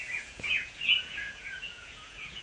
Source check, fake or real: fake